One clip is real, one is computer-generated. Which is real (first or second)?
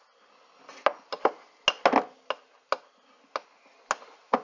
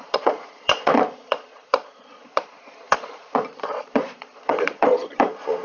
first